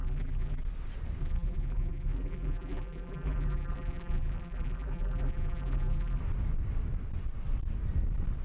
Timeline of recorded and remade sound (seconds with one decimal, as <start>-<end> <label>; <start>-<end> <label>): 0.0-0.6 remade; 0.6-1.2 recorded; 1.2-6.2 remade; 6.2-8.4 recorded